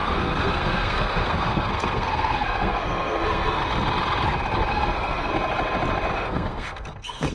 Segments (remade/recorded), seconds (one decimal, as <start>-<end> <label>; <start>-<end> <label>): 0.0-3.6 remade; 3.6-4.7 recorded; 4.7-5.3 remade; 5.3-6.1 recorded; 6.1-7.3 remade